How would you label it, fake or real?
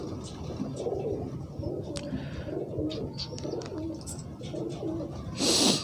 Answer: real